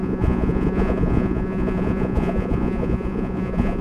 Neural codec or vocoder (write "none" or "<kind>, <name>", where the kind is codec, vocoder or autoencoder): vocoder, Vocos